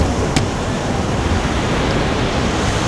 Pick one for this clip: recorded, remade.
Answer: recorded